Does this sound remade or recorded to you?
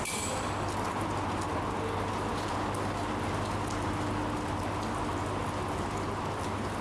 recorded